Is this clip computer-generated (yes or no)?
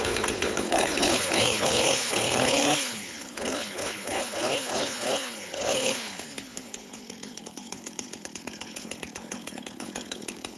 yes